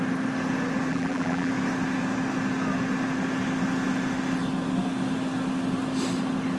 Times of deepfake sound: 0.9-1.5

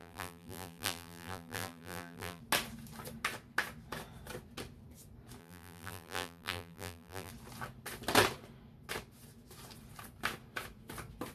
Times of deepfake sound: 0.0-2.4; 5.4-7.3

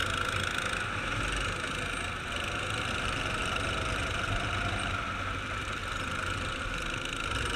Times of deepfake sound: 2.9-5.8; 6.6-7.6

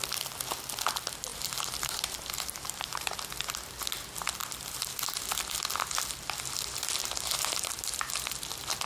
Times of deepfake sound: 1.3-3.3; 7.0-8.1

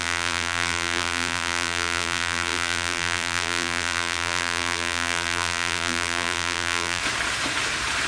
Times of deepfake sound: 0.0-7.0